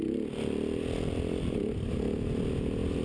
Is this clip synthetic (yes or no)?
no